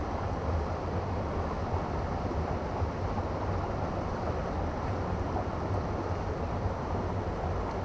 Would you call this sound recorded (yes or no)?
yes